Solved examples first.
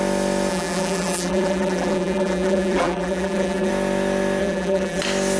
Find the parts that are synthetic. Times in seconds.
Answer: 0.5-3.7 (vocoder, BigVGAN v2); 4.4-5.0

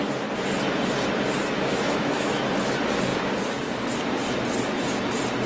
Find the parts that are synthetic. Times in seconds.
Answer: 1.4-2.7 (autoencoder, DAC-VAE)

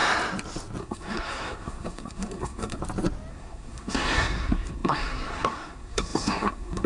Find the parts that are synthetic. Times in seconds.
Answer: 0.8-2.8 (codec, SNAC); 3.3-6.9